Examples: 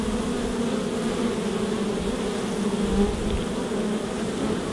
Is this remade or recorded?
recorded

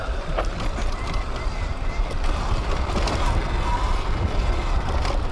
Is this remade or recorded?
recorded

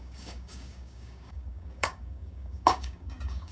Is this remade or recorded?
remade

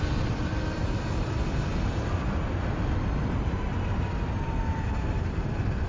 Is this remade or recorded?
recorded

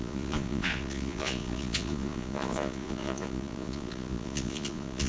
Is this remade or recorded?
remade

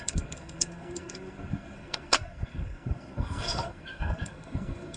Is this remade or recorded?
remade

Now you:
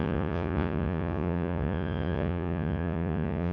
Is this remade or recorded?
remade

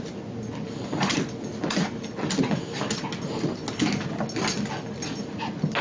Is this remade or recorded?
recorded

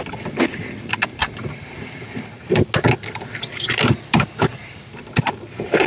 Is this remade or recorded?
recorded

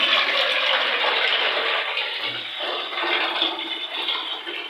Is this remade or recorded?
recorded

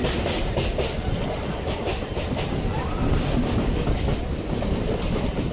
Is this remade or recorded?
remade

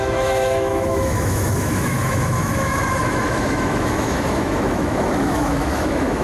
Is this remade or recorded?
remade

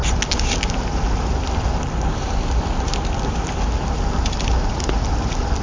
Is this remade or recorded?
recorded